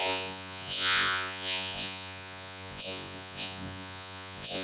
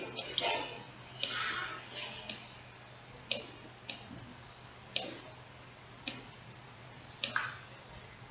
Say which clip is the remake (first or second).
first